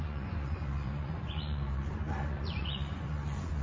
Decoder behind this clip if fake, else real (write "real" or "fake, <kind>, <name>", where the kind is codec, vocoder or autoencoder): fake, vocoder, Vocos